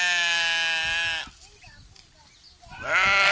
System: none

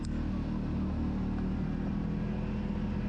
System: none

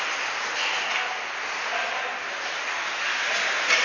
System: none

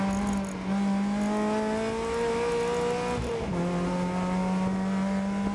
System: none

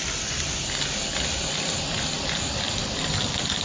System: none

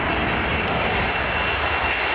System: none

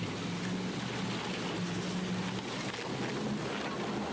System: none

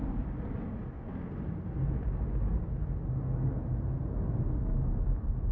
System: none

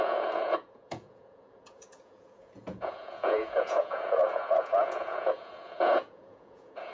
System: vocoder, Vocos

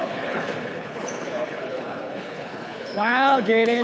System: codec, HILCodec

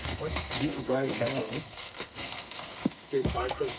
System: codec, SNAC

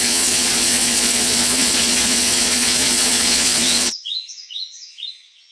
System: vocoder, Vocos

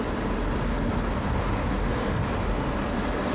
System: none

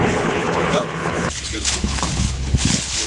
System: codec, HILCodec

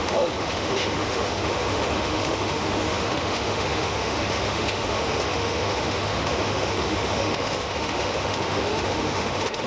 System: autoencoder, DAC-VAE